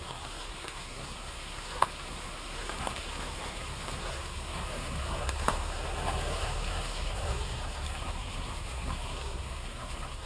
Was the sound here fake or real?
fake